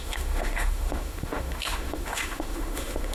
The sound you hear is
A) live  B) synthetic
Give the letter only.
B